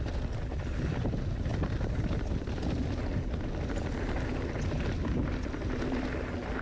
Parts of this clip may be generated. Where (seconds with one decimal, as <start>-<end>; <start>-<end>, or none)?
none

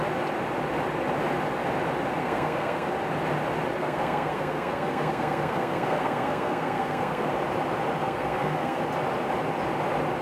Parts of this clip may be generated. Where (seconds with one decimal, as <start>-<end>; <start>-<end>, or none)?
2.2-2.9; 3.8-7.3; 8.0-8.8

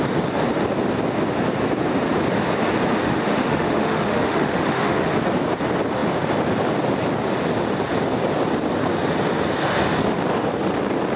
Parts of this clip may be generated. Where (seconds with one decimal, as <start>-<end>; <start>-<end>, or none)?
3.0-5.1

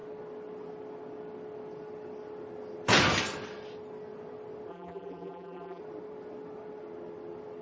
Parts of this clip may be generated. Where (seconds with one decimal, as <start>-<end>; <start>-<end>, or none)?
4.7-5.8

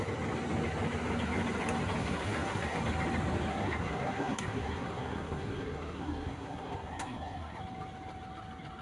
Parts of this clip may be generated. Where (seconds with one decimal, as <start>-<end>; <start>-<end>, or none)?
2.0-2.8; 3.5-7.6

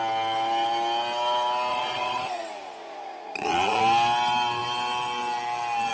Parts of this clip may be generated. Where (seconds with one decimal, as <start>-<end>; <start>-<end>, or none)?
1.7-3.8

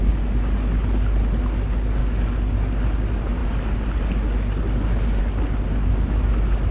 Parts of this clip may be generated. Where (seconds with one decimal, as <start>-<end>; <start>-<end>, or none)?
none

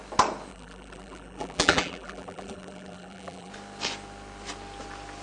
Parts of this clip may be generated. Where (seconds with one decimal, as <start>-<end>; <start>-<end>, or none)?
0.5-3.5